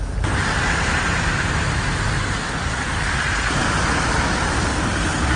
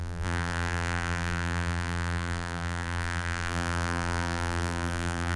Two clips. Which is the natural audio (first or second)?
first